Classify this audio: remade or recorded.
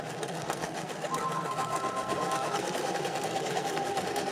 remade